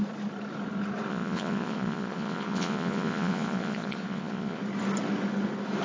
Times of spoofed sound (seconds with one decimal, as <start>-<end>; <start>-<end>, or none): 1.1-4.6